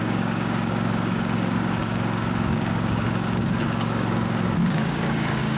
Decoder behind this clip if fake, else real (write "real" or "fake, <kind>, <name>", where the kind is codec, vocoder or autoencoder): fake, codec, DAC